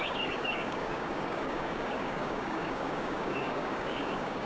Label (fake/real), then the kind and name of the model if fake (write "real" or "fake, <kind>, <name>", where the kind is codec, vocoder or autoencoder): fake, codec, DAC